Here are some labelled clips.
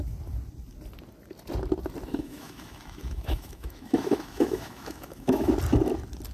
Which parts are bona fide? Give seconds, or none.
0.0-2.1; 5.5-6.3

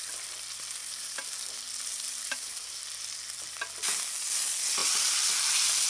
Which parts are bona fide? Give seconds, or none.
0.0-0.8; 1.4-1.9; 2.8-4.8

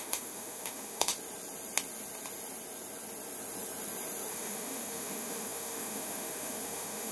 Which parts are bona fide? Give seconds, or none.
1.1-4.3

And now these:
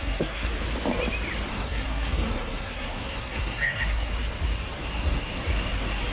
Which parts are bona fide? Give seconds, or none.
0.5-1.5; 4.1-6.1